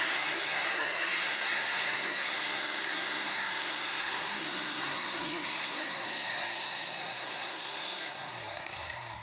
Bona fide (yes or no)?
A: no